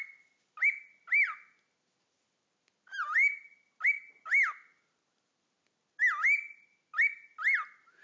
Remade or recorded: recorded